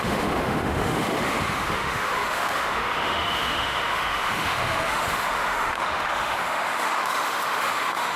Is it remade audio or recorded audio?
remade